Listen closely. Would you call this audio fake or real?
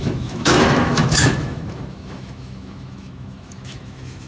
fake